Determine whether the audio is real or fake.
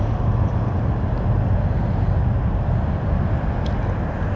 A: real